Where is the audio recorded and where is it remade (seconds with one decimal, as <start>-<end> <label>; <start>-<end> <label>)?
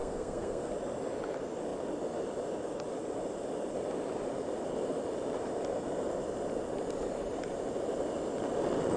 0.0-0.7 remade; 0.7-9.0 recorded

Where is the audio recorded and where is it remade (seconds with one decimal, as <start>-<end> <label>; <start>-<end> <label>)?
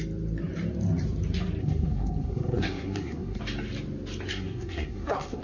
0.0-1.6 recorded; 1.6-3.4 remade; 3.4-4.3 recorded; 4.3-5.4 remade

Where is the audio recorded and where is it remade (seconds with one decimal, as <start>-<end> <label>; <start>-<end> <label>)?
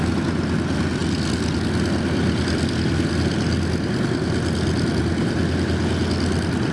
0.0-6.7 recorded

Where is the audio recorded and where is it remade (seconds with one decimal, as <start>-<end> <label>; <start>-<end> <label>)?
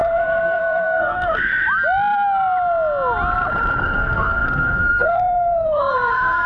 0.0-1.5 remade; 1.5-3.8 recorded; 3.8-6.5 remade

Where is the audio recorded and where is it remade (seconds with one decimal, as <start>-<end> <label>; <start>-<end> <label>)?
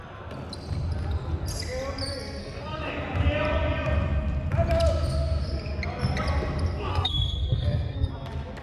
0.0-2.4 recorded; 2.4-2.9 remade; 2.9-6.9 recorded; 6.9-8.1 remade; 8.1-8.6 recorded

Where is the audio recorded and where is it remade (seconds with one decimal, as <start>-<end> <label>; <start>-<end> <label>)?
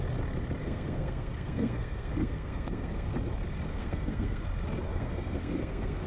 0.0-0.6 recorded; 0.6-3.1 remade; 3.1-3.7 recorded; 3.7-4.4 remade; 4.4-4.9 recorded; 4.9-6.1 remade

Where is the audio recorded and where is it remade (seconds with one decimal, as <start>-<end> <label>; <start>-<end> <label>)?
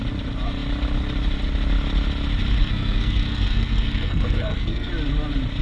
0.0-2.6 recorded; 2.6-4.9 remade; 4.9-5.6 recorded